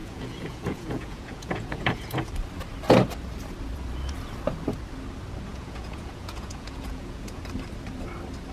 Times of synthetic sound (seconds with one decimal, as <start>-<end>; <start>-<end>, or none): 0.0-2.3; 5.5-7.4